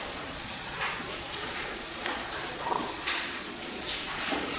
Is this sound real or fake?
fake